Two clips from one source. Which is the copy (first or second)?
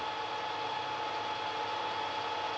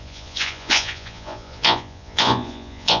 second